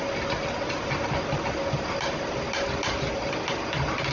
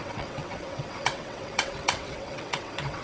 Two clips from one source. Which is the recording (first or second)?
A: first